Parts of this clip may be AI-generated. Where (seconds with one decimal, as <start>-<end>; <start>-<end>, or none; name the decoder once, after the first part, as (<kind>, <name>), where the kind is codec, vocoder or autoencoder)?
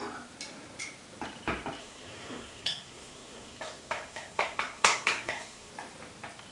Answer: 1.8-5.7 (codec, SNAC)